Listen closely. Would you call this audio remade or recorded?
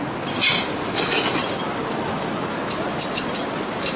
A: recorded